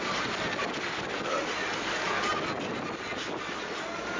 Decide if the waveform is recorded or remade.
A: recorded